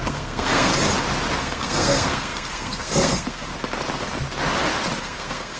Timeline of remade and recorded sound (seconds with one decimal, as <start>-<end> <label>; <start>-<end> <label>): 0.0-0.7 remade; 0.7-1.4 recorded; 1.4-3.5 remade; 3.5-5.0 recorded; 5.0-5.6 remade